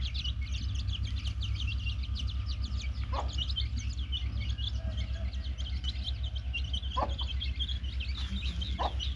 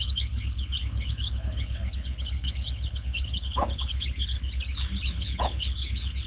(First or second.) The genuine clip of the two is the first